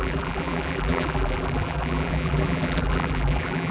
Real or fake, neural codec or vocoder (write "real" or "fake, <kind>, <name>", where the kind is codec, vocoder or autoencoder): fake, vocoder, BigVGAN v2